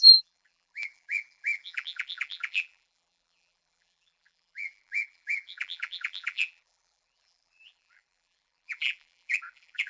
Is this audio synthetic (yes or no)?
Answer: yes